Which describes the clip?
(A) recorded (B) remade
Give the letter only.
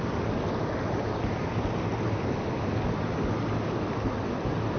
A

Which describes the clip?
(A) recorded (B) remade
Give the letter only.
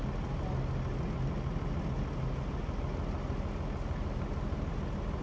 A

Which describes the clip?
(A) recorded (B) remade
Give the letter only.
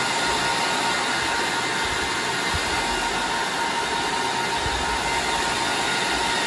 A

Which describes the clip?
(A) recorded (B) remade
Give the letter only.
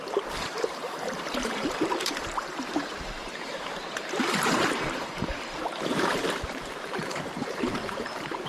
B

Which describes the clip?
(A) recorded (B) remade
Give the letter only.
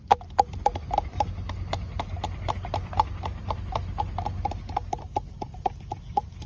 A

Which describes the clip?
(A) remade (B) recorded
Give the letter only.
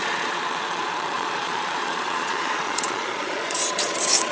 A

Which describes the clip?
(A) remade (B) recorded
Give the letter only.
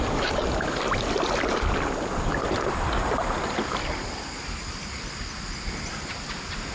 B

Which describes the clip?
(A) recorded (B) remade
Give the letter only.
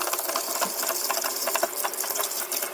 A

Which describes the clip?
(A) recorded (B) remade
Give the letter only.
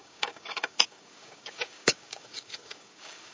B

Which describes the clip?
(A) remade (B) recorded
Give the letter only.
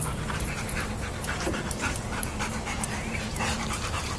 A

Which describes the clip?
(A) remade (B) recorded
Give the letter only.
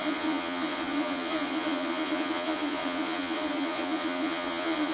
A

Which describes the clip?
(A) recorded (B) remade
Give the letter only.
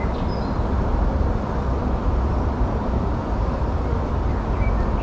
A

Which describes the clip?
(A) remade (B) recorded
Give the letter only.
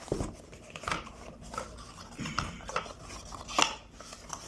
B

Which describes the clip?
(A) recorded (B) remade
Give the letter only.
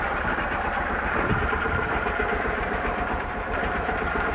B